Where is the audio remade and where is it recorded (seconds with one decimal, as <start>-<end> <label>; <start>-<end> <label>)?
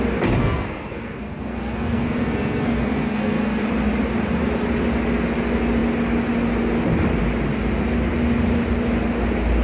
0.0-0.4 recorded; 0.4-3.7 remade; 3.7-9.6 recorded